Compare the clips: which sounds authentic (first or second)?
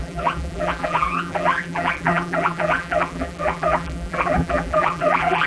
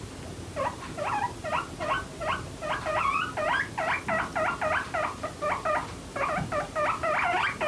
second